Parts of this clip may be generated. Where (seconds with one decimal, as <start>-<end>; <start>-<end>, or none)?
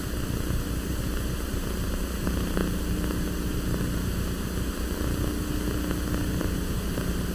2.6-4.0